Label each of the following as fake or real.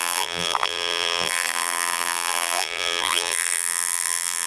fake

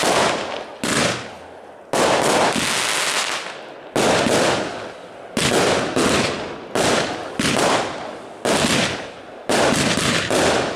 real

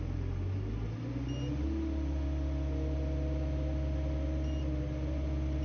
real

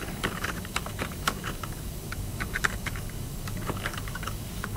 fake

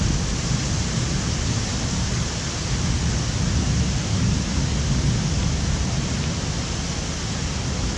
real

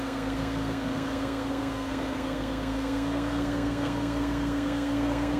fake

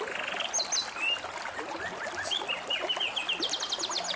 real